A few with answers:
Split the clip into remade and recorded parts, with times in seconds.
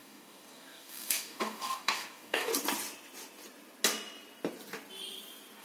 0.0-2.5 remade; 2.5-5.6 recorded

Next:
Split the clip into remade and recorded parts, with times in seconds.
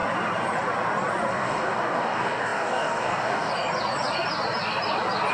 0.0-1.3 recorded; 1.3-3.5 remade; 3.5-5.3 recorded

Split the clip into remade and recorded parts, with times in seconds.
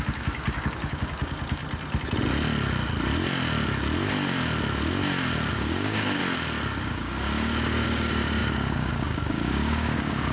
0.0-1.6 remade; 1.6-5.5 recorded; 5.5-6.2 remade; 6.2-6.8 recorded; 6.8-10.3 remade